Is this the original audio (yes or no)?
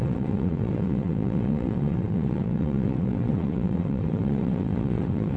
no